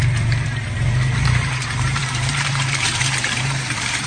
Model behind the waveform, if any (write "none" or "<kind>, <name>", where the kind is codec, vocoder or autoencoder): vocoder, BigVGAN v2